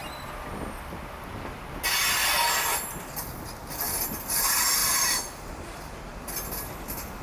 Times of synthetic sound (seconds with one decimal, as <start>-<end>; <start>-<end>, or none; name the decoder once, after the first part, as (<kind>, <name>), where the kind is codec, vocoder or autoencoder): none